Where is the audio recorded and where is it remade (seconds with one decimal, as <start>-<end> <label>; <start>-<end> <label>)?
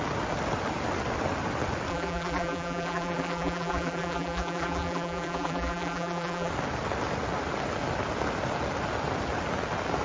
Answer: 0.0-1.9 recorded; 1.9-6.5 remade; 6.5-10.0 recorded